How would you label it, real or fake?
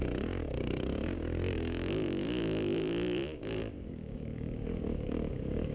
fake